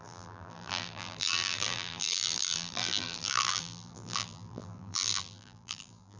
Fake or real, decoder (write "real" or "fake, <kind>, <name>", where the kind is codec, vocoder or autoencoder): fake, vocoder, BigVGAN v2